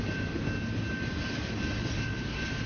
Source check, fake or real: real